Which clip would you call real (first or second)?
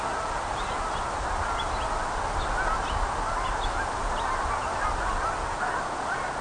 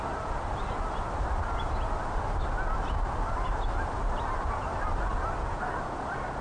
first